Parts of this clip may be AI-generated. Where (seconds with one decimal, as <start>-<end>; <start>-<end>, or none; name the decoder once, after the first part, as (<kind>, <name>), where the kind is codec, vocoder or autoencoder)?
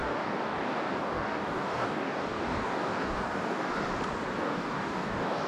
0.0-3.7 (codec, DAC); 4.4-5.5